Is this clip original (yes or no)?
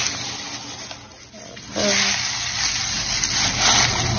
yes